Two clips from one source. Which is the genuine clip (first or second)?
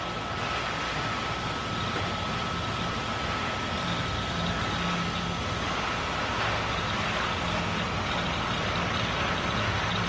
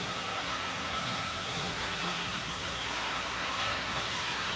first